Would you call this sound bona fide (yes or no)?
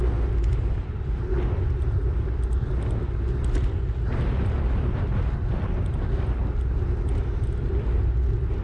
yes